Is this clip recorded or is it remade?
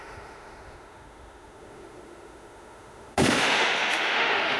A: remade